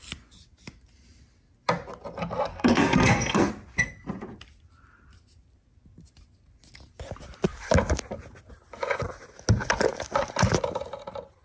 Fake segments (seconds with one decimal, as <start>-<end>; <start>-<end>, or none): 2.5-3.5